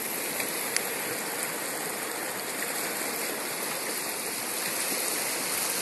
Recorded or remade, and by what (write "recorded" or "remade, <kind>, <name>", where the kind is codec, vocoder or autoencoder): recorded